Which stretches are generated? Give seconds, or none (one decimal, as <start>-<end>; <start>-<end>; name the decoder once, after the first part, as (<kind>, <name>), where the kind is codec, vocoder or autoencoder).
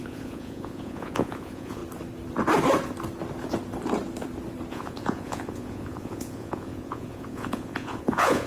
0.0-1.8 (vocoder, Vocos); 4.7-8.5